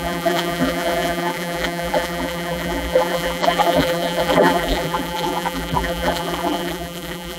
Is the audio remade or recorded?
remade